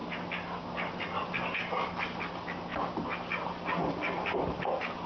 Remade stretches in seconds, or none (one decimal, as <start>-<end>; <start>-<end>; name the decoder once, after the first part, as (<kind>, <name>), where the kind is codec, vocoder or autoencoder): none